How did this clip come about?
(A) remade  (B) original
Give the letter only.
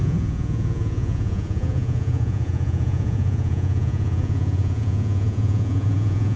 A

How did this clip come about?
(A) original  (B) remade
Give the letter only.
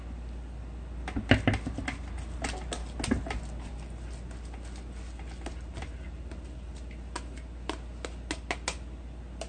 A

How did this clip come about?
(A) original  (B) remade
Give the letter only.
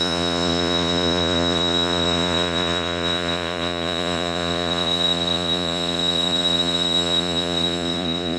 B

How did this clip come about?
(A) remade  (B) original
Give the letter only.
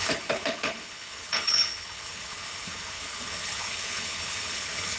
A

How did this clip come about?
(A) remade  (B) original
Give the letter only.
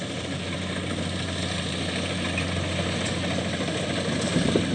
B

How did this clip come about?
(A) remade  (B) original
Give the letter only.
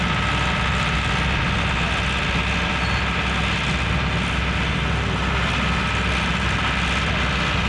B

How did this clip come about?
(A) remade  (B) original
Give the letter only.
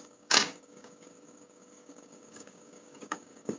A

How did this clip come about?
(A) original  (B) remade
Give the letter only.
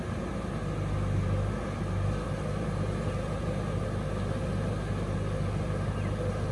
A